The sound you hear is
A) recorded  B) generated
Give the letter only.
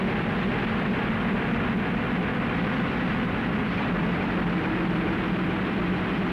B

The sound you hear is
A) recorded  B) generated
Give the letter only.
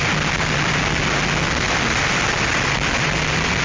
A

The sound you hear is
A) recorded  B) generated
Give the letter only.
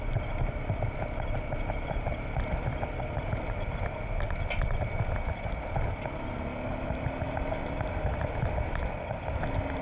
A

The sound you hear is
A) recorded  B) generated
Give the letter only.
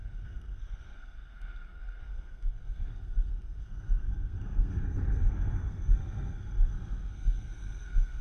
B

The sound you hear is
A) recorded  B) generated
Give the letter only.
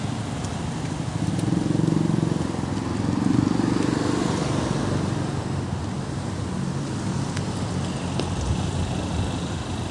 A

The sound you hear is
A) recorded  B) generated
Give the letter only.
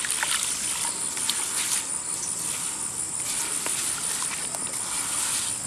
A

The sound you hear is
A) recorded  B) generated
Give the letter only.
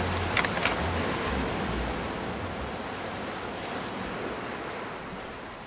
A